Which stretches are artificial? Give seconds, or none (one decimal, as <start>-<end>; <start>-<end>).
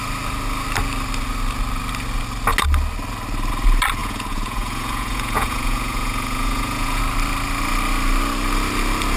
4.0-7.0